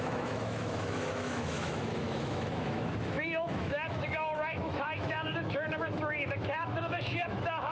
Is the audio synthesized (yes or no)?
yes